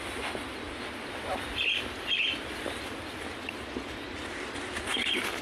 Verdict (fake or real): real